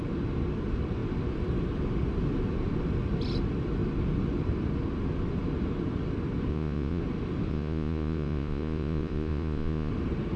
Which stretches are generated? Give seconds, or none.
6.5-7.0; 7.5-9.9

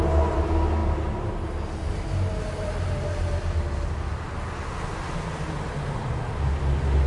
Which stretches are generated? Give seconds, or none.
none

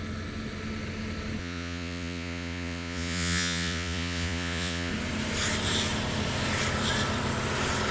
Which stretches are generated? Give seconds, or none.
1.4-4.9